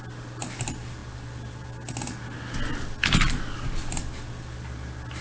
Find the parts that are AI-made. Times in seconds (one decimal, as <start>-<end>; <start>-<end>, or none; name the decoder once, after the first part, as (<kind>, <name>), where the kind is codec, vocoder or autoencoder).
none